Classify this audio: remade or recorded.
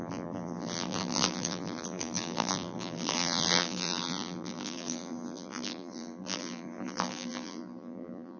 remade